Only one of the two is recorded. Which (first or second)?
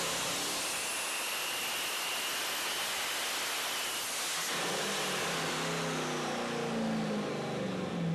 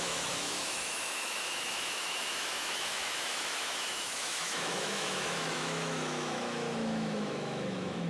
first